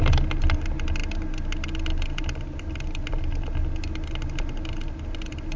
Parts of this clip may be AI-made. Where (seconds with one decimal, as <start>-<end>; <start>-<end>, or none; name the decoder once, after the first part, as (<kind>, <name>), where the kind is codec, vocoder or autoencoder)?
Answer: none

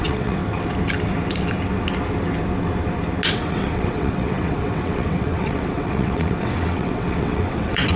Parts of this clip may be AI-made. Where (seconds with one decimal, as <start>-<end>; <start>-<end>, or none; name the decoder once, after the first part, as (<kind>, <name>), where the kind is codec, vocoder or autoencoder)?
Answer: 0.0-0.4 (vocoder, WaveNeXt); 3.3-8.0